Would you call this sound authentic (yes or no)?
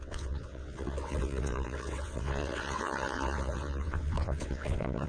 no